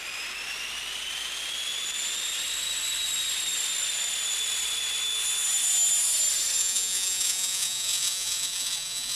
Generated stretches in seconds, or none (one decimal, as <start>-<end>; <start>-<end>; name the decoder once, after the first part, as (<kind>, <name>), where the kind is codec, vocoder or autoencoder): 6.6-9.2 (vocoder, Vocos)